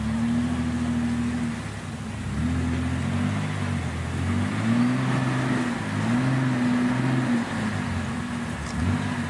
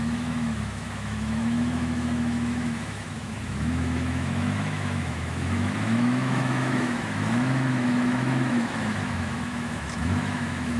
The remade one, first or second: second